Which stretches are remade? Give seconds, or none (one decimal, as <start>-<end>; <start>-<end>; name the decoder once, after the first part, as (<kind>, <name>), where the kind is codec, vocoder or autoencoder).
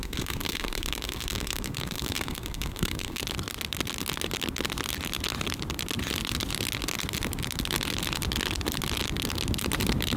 0.0-3.2 (codec, SNAC)